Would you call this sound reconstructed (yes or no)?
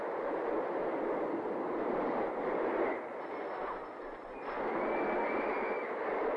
no